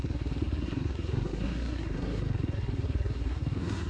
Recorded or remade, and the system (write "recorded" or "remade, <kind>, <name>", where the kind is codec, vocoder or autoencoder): remade, codec, SNAC